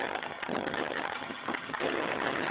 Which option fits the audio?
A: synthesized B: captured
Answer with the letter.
A